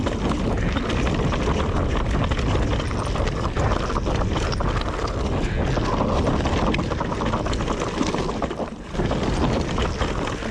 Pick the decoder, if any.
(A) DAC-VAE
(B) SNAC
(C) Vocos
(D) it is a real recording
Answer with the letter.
D